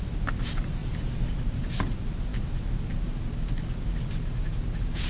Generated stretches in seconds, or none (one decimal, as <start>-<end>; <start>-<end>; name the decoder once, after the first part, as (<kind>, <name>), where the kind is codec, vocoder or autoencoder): none